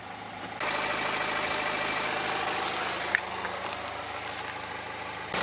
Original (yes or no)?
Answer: yes